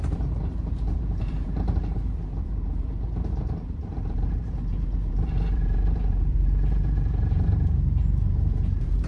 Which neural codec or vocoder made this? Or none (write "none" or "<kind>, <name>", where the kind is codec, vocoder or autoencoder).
vocoder, BigVGAN v2